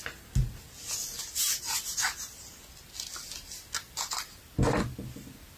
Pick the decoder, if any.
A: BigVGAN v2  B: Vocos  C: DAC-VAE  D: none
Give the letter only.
D